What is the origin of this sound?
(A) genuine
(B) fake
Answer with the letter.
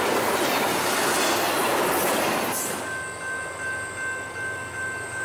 A